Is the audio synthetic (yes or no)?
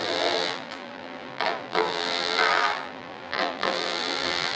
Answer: yes